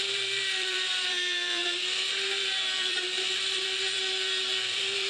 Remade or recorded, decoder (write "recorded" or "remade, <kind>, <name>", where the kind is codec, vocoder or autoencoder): remade, vocoder, BigVGAN v2